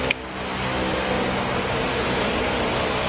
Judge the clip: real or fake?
real